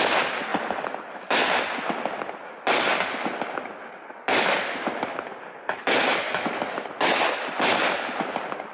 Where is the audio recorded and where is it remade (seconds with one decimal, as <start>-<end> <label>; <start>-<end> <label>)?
0.0-8.7 recorded